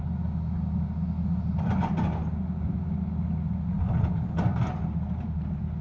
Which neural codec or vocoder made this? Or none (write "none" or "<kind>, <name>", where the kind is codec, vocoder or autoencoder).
none